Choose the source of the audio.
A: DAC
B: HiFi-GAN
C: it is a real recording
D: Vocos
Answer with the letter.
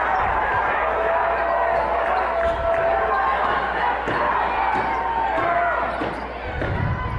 C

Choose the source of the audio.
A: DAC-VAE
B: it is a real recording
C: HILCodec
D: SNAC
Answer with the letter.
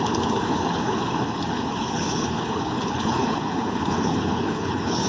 C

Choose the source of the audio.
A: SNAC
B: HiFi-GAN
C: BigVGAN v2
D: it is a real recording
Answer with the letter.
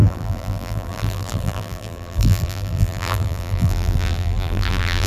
C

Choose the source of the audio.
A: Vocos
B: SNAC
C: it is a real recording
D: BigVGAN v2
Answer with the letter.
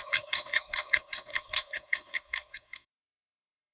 B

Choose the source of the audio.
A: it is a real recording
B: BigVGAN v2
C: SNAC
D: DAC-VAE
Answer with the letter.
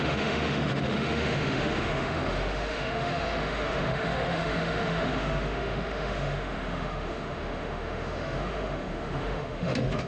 D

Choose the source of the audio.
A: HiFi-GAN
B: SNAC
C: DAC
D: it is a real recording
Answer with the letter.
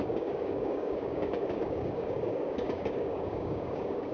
C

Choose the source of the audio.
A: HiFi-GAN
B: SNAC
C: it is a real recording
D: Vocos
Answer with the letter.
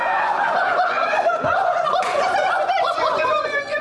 D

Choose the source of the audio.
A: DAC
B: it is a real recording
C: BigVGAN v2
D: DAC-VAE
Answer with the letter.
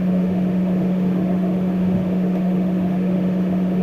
D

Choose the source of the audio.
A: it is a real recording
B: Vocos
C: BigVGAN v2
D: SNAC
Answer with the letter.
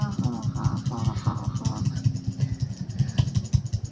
A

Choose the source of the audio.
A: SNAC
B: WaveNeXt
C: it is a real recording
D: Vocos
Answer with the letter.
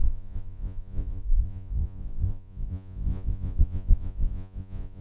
D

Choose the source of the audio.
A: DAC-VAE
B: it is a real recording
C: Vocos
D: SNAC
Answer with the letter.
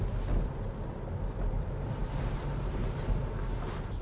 B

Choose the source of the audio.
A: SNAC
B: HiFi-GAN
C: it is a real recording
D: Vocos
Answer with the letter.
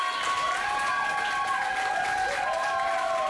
C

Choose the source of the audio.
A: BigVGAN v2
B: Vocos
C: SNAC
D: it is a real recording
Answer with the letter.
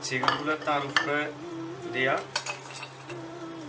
D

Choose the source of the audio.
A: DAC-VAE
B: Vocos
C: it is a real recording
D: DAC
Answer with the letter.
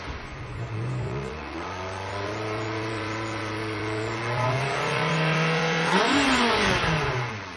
B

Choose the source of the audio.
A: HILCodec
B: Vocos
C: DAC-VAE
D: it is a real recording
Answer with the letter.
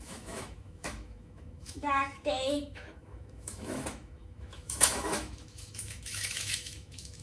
C